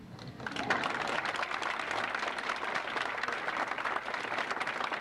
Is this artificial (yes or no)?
no